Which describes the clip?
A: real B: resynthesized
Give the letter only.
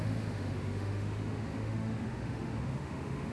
B